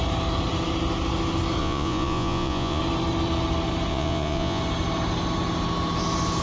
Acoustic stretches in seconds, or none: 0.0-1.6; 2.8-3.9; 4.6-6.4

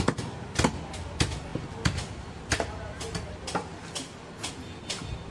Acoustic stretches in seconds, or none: 0.0-5.3

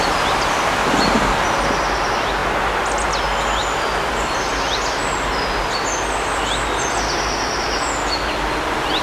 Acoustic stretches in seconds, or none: 0.0-3.6; 4.5-9.0

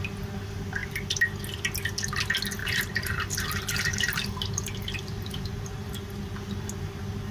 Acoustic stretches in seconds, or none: 0.0-2.6; 5.9-7.3

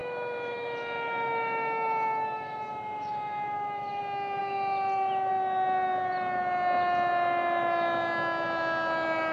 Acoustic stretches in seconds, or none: 4.0-9.3